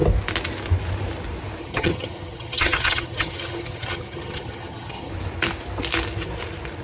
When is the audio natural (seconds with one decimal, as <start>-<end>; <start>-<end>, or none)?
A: 0.0-1.6; 5.1-6.8